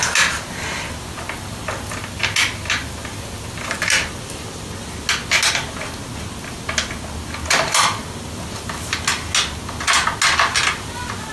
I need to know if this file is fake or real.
real